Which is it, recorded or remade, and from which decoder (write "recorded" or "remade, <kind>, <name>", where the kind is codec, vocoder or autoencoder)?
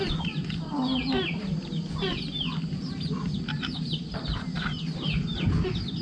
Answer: recorded